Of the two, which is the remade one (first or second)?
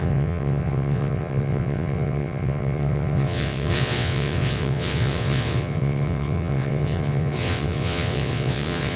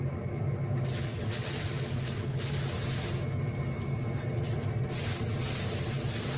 first